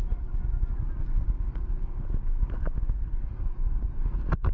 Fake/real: real